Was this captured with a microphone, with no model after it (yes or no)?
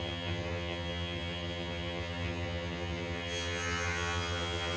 no